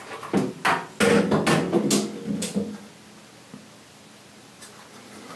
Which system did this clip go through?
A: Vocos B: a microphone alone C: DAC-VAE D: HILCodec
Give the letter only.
B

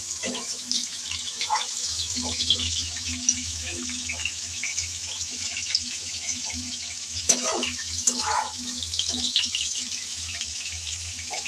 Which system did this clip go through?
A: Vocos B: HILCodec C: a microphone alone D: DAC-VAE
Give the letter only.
D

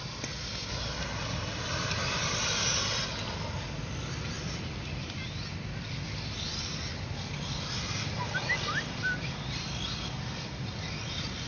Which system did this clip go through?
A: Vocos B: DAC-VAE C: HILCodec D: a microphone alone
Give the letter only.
D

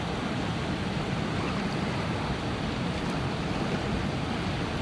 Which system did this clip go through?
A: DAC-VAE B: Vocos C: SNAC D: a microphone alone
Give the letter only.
D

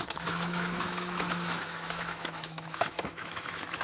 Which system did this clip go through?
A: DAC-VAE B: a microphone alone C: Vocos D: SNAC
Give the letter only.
A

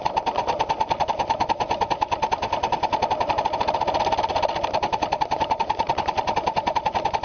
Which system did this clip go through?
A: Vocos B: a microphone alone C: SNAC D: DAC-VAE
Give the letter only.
B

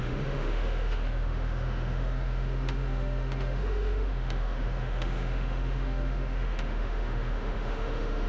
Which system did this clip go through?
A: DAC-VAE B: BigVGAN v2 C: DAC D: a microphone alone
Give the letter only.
A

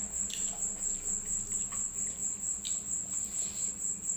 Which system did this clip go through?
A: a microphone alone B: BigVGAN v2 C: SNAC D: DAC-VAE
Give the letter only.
A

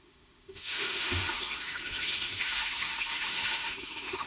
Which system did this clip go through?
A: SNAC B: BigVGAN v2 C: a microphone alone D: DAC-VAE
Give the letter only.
D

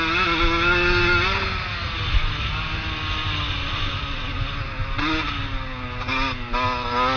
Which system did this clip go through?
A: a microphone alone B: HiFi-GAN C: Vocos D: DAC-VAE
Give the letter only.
A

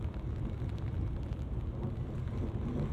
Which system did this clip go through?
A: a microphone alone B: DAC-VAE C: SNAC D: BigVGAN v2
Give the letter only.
A